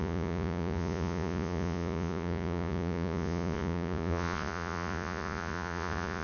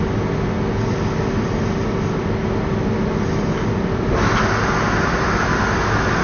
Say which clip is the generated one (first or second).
first